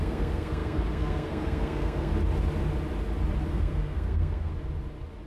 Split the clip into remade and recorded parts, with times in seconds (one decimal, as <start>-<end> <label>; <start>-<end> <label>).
0.0-2.1 remade; 2.1-3.5 recorded; 3.5-4.5 remade; 4.5-5.3 recorded